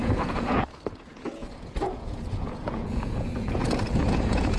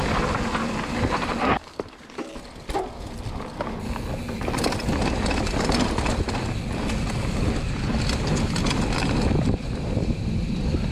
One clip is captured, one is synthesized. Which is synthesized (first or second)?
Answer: first